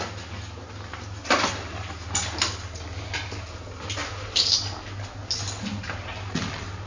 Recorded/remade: recorded